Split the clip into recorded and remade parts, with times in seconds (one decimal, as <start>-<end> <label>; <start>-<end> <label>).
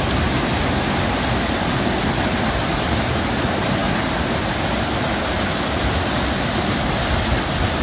0.0-7.8 recorded